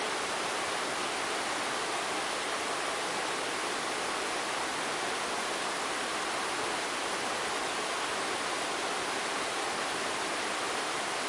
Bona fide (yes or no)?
yes